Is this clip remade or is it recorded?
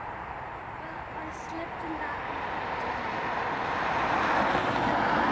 recorded